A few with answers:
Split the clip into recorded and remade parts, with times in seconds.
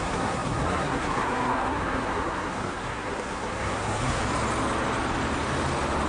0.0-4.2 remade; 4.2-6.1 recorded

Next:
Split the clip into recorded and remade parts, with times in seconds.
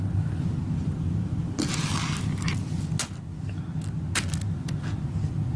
0.0-5.6 recorded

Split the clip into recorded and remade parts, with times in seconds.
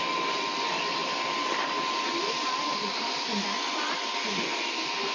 0.0-5.1 recorded